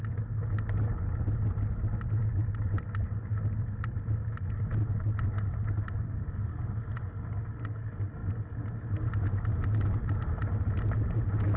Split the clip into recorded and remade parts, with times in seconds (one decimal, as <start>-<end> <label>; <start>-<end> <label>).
0.0-11.6 recorded